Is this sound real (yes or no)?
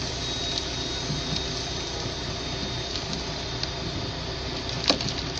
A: yes